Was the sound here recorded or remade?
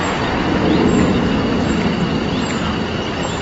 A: recorded